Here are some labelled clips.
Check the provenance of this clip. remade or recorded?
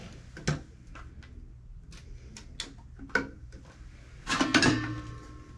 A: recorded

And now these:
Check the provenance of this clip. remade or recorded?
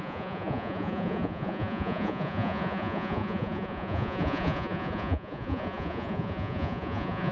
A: remade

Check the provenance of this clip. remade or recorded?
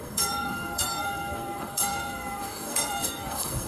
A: remade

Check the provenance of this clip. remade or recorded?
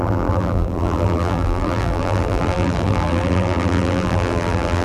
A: remade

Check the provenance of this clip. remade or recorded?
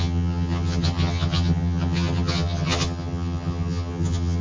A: remade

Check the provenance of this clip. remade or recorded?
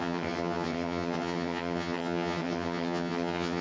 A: remade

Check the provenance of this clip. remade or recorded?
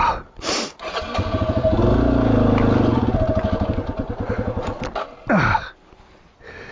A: recorded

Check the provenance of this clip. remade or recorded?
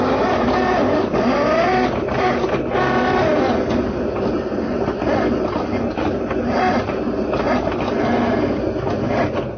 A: recorded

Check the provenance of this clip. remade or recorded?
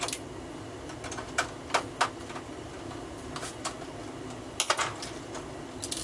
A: recorded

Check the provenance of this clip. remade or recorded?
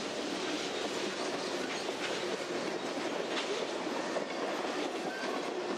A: recorded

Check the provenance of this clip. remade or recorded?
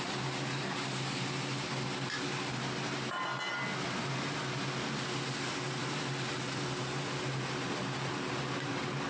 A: recorded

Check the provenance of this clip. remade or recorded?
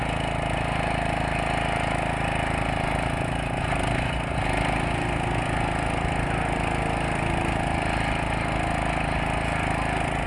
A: recorded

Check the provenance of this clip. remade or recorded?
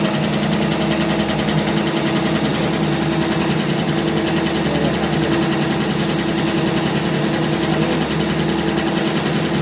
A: recorded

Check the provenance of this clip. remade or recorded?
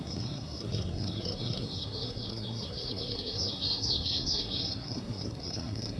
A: remade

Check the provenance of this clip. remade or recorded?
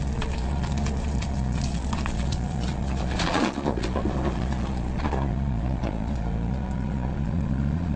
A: remade